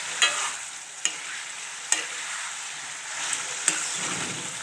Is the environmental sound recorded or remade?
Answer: recorded